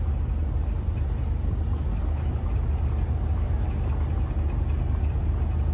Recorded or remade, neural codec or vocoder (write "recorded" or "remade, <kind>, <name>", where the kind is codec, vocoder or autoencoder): recorded